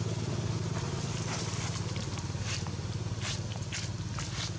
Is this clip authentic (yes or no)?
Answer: yes